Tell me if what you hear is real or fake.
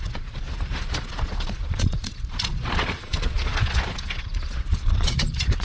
fake